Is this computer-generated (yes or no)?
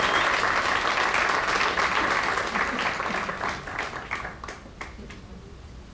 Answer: no